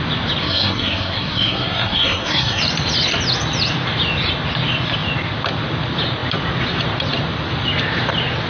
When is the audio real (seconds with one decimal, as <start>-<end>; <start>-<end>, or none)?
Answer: 0.0-0.4; 2.6-8.5